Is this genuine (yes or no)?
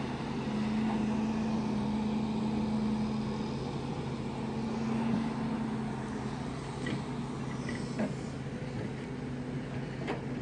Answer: yes